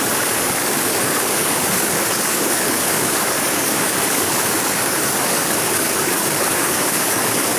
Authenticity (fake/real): fake